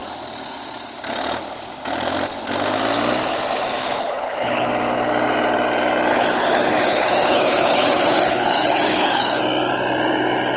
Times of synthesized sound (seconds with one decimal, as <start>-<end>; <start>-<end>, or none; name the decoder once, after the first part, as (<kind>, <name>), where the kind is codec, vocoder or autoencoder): 3.8-4.7 (codec, HILCodec); 6.1-9.4